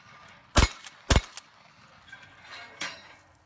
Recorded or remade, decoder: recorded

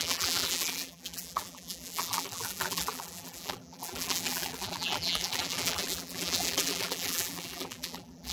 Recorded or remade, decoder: remade, vocoder, BigVGAN v2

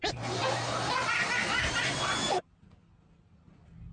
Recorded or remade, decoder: recorded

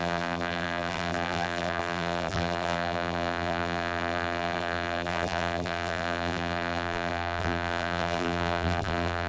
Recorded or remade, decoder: remade, vocoder, BigVGAN v2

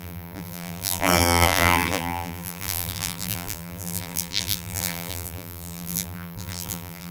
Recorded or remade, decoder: remade, vocoder, BigVGAN v2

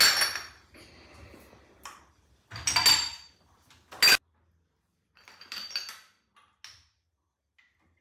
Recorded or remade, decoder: recorded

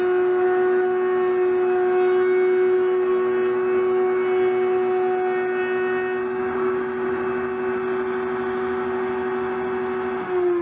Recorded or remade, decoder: recorded